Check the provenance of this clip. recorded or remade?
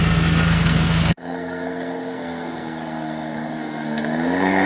remade